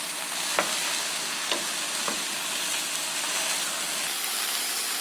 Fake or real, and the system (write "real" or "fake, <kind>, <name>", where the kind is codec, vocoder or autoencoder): real